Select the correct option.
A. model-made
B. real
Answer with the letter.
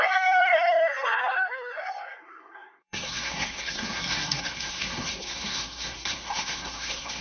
A